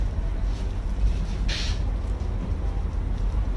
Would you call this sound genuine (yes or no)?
yes